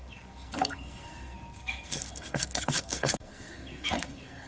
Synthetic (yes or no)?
yes